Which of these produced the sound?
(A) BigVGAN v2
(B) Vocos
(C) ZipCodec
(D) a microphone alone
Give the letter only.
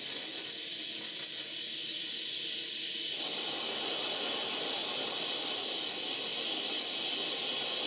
D